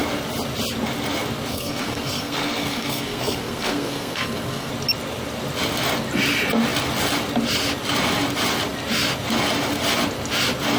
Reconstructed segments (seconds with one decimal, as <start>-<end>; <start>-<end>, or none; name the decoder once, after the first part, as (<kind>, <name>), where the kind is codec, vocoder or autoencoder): 1.5-4.7 (codec, SNAC)